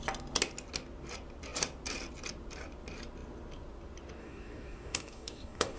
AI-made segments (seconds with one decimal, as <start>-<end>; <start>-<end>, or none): 4.2-5.8